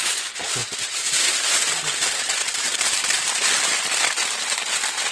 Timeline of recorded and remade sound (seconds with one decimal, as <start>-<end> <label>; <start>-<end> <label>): 0.0-0.6 recorded; 0.6-3.7 remade; 3.7-5.1 recorded